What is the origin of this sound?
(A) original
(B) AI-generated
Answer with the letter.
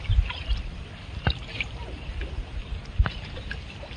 A